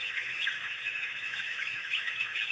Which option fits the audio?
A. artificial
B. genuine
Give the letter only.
A